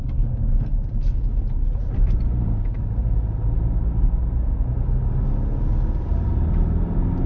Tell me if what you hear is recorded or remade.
recorded